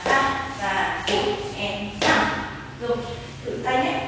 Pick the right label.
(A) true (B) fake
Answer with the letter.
A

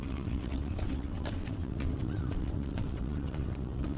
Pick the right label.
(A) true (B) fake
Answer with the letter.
B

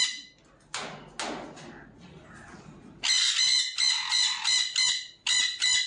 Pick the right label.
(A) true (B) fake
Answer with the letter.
A